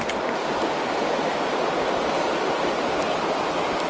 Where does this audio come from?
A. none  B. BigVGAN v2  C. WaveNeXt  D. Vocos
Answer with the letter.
A